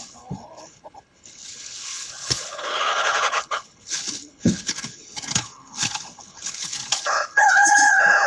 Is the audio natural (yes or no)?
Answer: no